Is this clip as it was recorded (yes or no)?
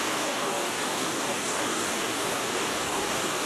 no